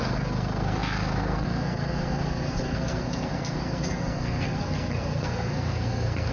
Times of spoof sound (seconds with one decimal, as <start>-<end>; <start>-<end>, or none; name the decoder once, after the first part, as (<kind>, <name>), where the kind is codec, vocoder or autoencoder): 0.0-6.3 (codec, SNAC)